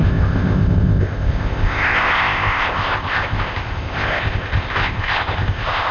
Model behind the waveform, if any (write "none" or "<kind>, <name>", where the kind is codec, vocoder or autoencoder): codec, ZipCodec